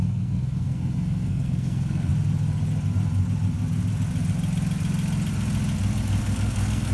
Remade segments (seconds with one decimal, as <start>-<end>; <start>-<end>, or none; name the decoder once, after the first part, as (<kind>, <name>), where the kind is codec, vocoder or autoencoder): 0.0-2.1 (codec, SNAC); 6.2-6.9

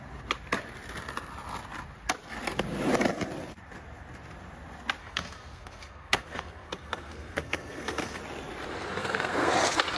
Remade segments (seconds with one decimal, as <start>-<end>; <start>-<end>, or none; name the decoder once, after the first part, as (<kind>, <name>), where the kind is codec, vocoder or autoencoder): 5.0-8.2 (codec, SNAC); 9.0-9.5

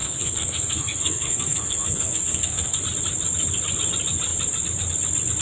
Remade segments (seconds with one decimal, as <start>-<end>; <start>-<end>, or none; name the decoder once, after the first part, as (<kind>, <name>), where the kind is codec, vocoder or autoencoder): 0.0-2.8 (codec, SNAC)

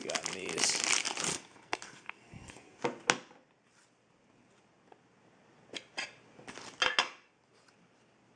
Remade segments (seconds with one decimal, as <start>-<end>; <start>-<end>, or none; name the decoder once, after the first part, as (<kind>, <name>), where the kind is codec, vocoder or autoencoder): 1.3-2.8 (codec, SNAC)

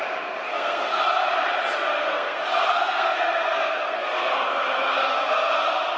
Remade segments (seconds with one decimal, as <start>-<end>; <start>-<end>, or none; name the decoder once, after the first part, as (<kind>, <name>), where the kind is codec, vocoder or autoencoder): 0.5-1.0 (codec, SNAC); 1.9-5.5